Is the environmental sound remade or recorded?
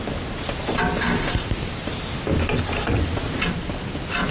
recorded